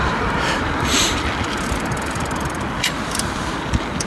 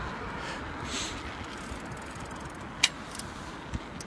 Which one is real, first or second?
second